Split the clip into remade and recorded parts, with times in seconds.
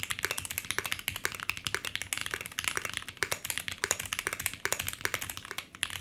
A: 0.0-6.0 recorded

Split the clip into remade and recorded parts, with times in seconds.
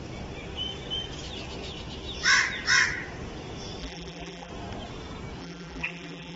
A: 0.0-3.8 recorded; 3.8-4.5 remade; 4.5-5.4 recorded; 5.4-6.4 remade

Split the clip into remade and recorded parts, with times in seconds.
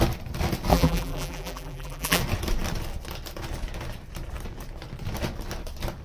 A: 0.0-0.7 recorded; 0.7-2.2 remade; 2.2-6.0 recorded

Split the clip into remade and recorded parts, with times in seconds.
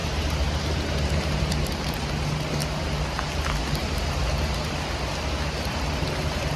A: 0.0-1.5 remade; 1.5-6.6 recorded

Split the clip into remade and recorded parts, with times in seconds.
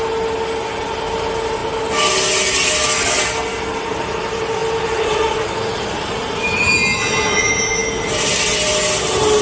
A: 0.0-4.6 recorded; 4.6-6.7 remade; 6.7-9.4 recorded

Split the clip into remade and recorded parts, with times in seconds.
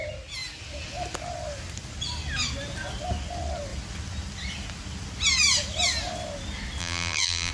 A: 0.0-6.8 recorded; 6.8-7.5 remade